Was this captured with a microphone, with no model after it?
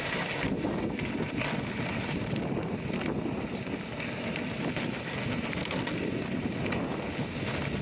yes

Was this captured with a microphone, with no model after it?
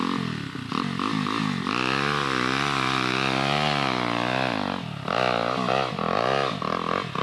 yes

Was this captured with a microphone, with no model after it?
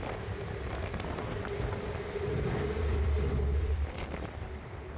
no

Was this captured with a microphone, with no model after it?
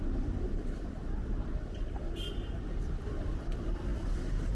no